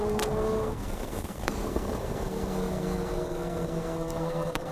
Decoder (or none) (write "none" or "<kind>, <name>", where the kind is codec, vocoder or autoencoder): codec, SNAC